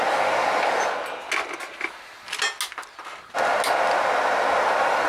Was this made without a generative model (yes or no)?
yes